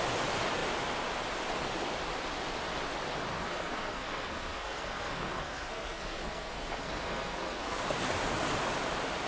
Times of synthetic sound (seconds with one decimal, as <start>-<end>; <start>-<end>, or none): 3.3-7.8